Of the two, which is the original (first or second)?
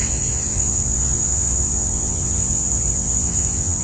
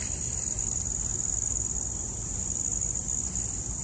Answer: second